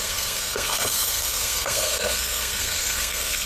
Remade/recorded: remade